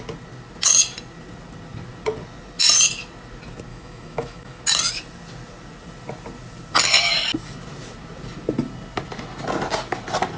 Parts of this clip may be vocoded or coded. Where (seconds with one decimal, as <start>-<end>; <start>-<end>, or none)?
3.7-4.6